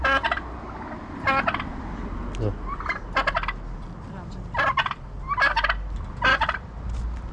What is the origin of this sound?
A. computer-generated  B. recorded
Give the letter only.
B